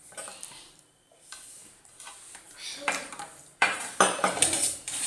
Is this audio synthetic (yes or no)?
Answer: yes